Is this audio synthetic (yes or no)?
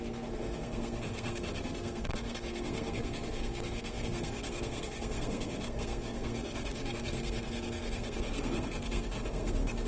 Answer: yes